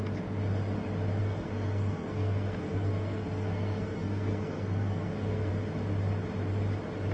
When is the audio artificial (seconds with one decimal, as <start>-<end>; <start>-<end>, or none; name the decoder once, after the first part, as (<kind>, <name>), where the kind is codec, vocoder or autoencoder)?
1.2-5.5 (codec, SNAC)